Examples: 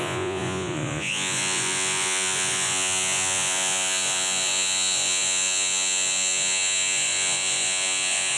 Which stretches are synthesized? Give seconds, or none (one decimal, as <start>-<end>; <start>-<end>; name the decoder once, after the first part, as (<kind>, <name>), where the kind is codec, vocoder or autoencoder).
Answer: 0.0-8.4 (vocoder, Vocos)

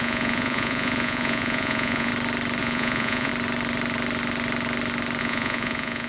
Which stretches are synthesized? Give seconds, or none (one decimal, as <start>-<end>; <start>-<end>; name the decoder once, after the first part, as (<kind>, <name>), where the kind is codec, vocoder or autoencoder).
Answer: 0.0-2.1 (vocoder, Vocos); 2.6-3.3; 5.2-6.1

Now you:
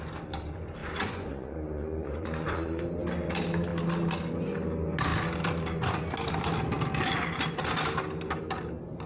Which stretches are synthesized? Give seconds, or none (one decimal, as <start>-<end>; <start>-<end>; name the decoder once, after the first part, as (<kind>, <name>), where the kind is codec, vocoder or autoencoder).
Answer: 0.8-2.8 (vocoder, Vocos)

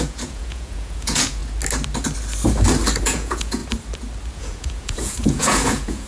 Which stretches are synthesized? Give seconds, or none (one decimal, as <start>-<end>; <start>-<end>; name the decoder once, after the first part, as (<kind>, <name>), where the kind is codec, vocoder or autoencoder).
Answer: 0.0-1.4 (vocoder, Vocos); 3.0-3.6; 4.3-6.1